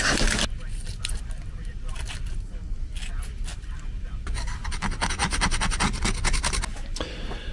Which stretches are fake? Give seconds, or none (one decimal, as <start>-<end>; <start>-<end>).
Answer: none